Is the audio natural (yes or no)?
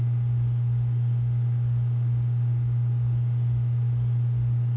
yes